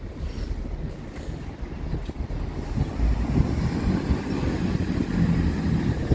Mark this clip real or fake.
real